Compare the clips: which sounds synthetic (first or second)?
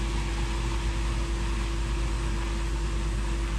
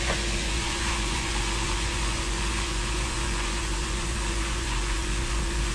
second